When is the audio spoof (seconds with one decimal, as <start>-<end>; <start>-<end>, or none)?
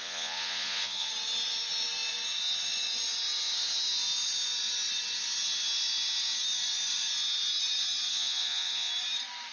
0.0-1.1; 8.1-8.9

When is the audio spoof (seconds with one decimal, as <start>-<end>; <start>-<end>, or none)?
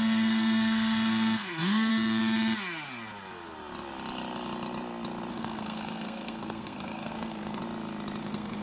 0.0-1.9; 5.3-7.6; 8.2-8.6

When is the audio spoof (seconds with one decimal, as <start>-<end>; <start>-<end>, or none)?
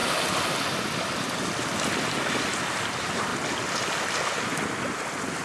none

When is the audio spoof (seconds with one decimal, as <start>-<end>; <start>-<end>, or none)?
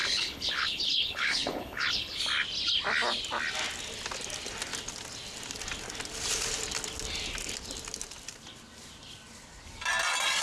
0.0-2.2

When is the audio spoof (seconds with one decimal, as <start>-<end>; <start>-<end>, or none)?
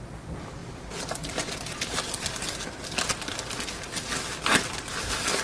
none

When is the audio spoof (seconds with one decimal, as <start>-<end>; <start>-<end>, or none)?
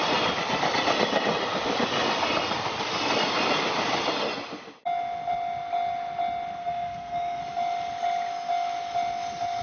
6.6-7.4